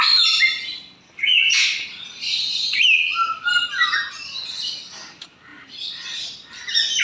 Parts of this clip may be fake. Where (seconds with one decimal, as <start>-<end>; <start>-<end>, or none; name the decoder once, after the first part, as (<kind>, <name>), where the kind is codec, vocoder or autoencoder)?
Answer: none